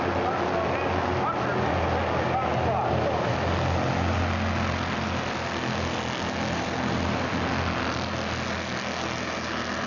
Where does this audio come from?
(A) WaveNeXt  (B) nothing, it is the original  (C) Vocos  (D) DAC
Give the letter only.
B